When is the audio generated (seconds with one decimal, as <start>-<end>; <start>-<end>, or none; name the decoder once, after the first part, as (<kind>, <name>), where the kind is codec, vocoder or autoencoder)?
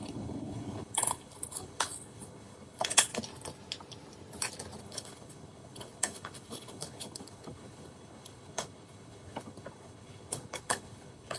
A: 0.0-3.1 (codec, HILCodec); 4.8-11.4